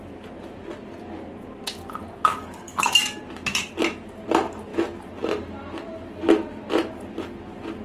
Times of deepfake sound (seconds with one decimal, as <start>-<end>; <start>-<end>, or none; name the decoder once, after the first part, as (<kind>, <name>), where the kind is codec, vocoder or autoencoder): 2.3-3.2 (codec, DAC)